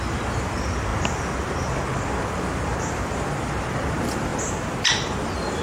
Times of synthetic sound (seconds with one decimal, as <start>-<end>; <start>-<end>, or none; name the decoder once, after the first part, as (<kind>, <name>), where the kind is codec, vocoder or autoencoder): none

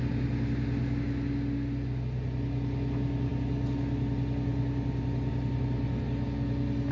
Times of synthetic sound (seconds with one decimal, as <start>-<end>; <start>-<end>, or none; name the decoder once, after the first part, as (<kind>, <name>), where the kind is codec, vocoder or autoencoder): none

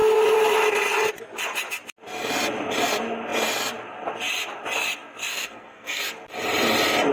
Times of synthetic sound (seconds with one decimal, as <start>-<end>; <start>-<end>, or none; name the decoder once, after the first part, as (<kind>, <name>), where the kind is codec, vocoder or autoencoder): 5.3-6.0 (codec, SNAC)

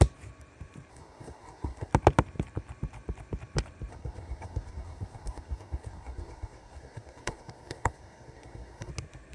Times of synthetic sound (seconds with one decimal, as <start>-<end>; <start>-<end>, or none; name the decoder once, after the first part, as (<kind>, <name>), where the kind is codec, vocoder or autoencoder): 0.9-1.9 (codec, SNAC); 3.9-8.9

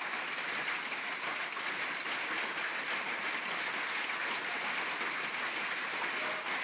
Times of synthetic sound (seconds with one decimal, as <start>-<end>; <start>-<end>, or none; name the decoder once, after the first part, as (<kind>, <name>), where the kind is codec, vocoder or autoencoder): none

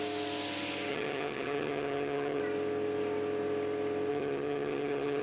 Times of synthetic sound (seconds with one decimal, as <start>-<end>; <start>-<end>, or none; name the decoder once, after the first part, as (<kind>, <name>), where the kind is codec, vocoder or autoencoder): 0.9-2.4 (vocoder, HiFi-GAN); 4.1-5.2

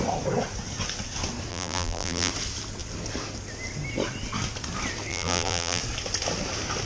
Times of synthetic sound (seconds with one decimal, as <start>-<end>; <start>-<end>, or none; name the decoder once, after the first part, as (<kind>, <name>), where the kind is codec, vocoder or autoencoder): 1.5-2.3 (vocoder, BigVGAN v2); 5.1-5.8